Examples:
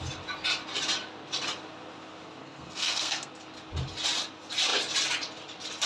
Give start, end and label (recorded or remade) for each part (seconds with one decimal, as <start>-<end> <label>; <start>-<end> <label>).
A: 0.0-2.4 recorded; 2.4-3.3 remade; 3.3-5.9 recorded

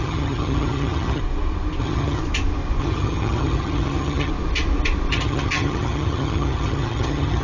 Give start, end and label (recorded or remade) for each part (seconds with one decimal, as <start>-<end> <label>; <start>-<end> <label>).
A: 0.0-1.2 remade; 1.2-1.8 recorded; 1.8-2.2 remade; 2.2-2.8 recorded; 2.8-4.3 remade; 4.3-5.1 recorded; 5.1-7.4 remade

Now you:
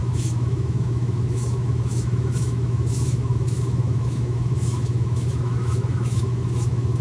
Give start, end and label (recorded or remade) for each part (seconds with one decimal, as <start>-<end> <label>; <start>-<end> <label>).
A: 0.0-7.0 remade

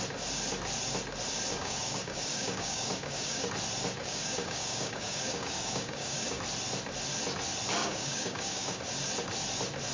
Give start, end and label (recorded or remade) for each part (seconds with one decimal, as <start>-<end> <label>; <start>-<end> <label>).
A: 0.0-1.5 recorded; 1.5-3.5 remade; 3.5-4.0 recorded; 4.0-6.4 remade; 6.4-7.8 recorded; 7.8-8.8 remade; 8.8-9.9 recorded

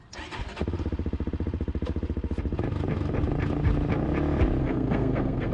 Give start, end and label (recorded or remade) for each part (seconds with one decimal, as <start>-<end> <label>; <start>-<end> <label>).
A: 0.0-4.6 recorded; 4.6-5.5 remade